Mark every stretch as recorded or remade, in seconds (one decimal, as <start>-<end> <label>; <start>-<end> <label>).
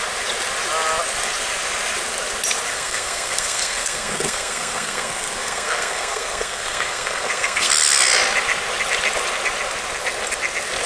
0.0-2.7 recorded; 2.7-7.7 remade; 7.7-10.9 recorded